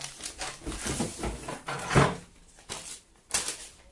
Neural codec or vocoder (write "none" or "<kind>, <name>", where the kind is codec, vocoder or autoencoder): none